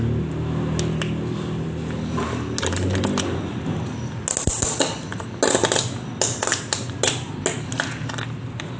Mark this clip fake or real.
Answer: real